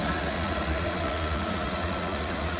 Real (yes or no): no